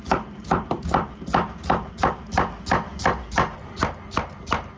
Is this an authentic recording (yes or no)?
yes